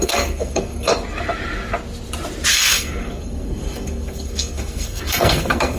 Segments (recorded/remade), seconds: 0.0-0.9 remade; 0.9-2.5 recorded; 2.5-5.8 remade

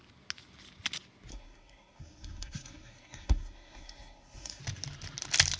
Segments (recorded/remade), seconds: 0.0-1.3 recorded; 1.3-4.6 remade; 4.6-5.6 recorded

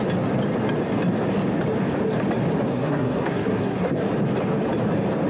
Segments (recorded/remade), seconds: 0.0-2.7 recorded; 2.7-4.1 remade; 4.1-5.3 recorded

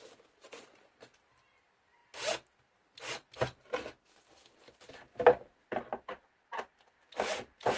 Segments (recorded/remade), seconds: 0.0-7.8 recorded

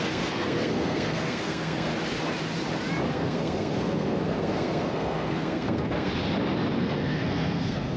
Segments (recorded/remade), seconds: 0.0-1.9 remade; 1.9-3.1 recorded; 3.1-6.1 remade; 6.1-6.8 recorded; 6.8-8.0 remade

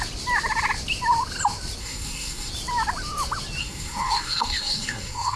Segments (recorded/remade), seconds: 0.0-1.8 recorded; 1.8-2.5 remade; 2.5-3.6 recorded; 3.6-5.4 remade